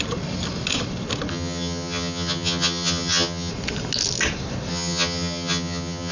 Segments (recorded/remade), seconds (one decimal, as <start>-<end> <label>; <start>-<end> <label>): 0.0-1.3 recorded; 1.3-3.5 remade; 3.5-4.7 recorded; 4.7-6.1 remade